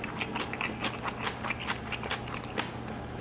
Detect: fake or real real